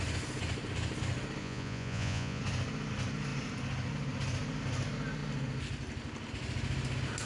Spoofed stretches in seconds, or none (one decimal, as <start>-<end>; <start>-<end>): 1.4-2.4